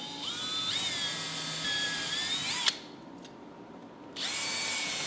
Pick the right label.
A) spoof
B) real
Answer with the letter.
B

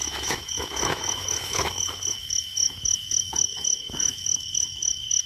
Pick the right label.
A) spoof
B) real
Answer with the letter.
A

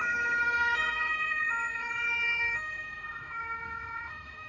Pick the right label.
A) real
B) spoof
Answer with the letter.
B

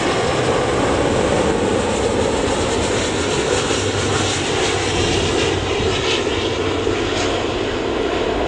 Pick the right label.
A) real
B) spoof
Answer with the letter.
A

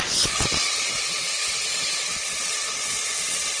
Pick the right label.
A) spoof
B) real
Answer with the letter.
A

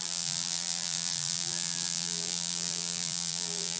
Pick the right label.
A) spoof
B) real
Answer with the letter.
A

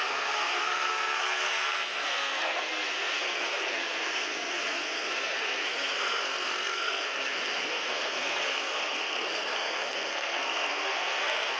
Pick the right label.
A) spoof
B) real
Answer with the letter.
A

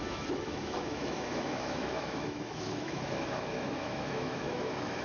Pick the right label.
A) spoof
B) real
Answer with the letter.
A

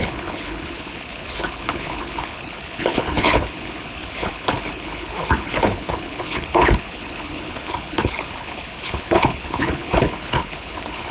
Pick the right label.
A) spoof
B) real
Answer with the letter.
A